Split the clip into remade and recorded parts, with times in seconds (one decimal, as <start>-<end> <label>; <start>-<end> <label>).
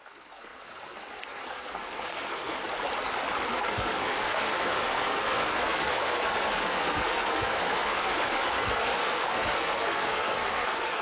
0.0-2.6 remade; 2.6-3.5 recorded; 3.5-11.0 remade